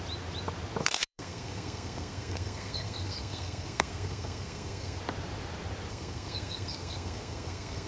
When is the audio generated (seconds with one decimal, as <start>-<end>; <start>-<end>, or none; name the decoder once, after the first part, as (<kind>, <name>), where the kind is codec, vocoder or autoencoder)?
0.8-5.0 (codec, SNAC); 5.9-7.9